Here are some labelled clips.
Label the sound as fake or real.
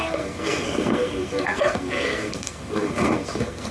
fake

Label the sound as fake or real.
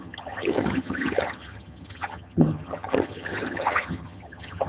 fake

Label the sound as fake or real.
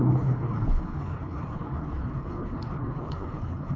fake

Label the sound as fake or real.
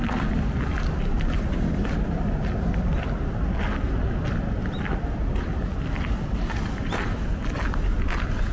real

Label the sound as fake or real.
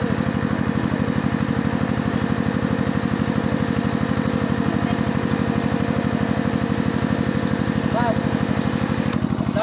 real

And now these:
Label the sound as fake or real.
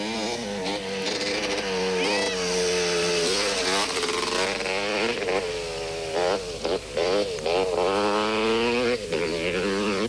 real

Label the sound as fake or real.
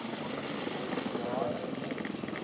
real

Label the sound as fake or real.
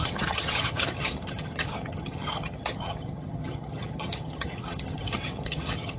fake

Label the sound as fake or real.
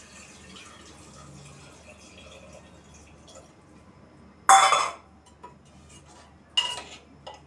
real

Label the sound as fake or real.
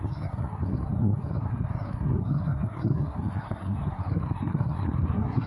fake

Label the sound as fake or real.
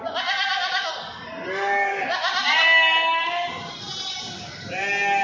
real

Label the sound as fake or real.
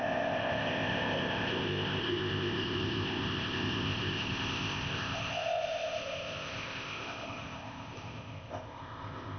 fake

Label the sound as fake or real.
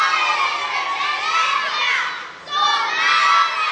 real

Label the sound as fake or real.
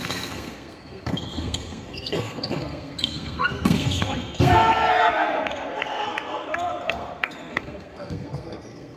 fake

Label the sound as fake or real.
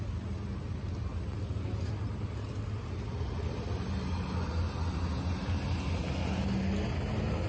real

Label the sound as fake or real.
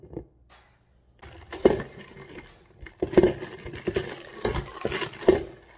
real